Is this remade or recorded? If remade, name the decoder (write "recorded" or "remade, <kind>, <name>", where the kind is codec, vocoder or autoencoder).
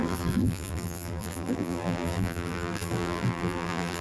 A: remade, vocoder, BigVGAN v2